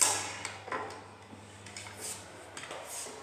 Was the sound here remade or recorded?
recorded